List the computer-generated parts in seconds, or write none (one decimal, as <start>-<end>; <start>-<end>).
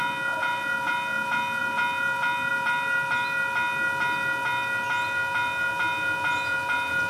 none